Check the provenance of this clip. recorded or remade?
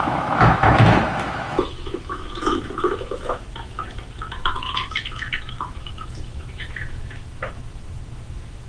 remade